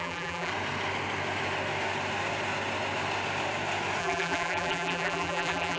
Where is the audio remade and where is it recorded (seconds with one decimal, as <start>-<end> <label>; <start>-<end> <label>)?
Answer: 0.0-0.5 remade; 0.5-4.0 recorded; 4.0-5.8 remade